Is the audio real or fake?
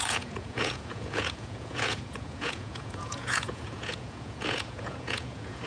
fake